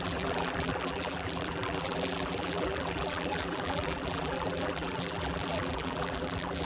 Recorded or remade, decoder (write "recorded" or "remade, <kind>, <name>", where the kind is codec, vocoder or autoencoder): remade, vocoder, BigVGAN v2